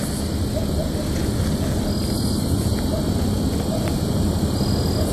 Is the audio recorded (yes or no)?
yes